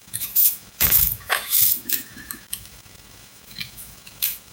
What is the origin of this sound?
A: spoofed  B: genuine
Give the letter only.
A